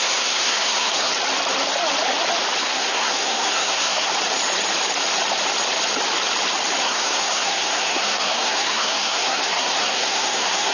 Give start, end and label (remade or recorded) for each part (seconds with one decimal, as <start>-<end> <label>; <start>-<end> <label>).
0.0-1.1 remade; 1.1-2.6 recorded; 2.6-4.1 remade; 4.1-6.8 recorded; 6.8-10.7 remade